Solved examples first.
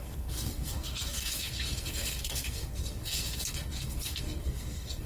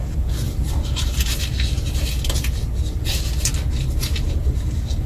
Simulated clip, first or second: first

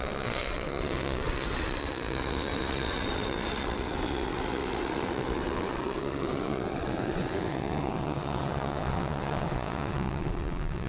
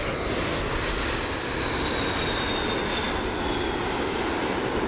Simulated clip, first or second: first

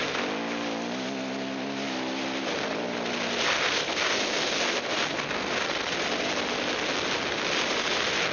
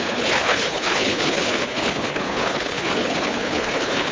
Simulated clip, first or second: second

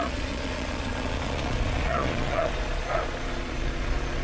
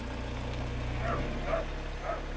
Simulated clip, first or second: first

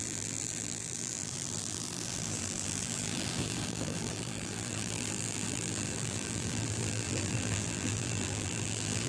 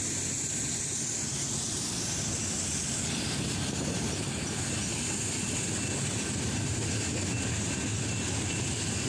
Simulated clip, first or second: first